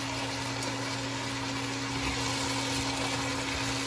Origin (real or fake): real